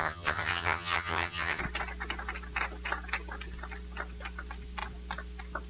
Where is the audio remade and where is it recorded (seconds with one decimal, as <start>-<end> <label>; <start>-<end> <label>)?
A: 0.0-1.6 remade; 1.6-5.7 recorded